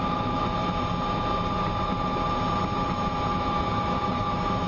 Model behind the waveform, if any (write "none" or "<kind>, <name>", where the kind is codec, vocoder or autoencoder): none